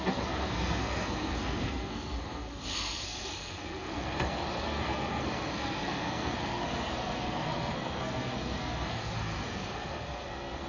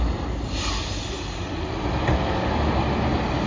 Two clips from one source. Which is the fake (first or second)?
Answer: first